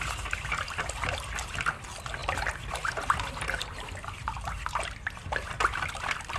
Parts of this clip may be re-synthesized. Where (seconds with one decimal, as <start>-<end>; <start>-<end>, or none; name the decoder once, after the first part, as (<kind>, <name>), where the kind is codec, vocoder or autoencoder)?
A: none